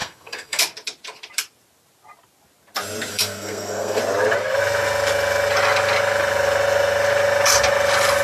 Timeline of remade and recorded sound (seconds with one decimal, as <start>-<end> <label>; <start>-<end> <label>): 0.0-0.6 remade; 0.6-3.1 recorded; 3.1-4.0 remade; 4.0-8.2 recorded